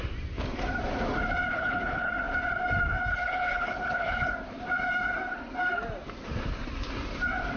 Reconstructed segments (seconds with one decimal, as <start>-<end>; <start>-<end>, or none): 1.5-2.1; 3.1-4.3